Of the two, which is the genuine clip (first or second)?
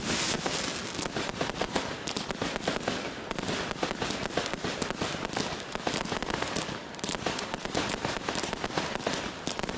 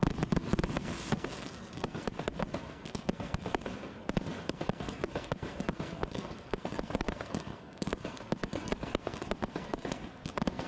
first